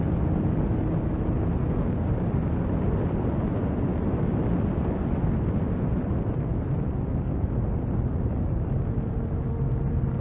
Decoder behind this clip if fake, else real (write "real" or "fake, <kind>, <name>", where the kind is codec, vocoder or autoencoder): real